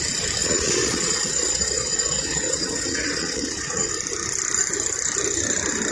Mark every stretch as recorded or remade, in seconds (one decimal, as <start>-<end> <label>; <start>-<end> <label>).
0.0-0.4 recorded; 0.4-3.9 remade; 3.9-5.9 recorded